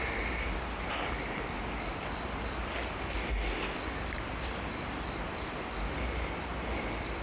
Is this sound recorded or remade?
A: recorded